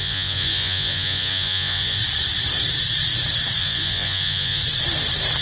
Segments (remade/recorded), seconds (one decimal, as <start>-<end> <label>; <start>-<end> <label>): 0.0-2.0 remade; 2.0-3.6 recorded; 3.6-4.6 remade; 4.6-5.4 recorded